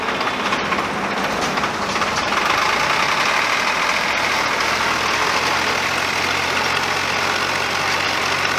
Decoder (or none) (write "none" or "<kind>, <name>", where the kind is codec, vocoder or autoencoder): none